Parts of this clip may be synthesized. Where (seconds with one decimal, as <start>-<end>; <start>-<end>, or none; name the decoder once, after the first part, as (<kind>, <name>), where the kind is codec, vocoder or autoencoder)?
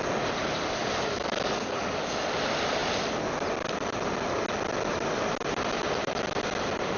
0.4-2.0 (codec, DAC)